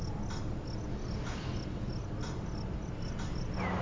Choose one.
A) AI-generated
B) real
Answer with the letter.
B